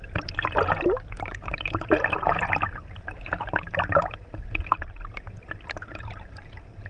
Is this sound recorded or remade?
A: remade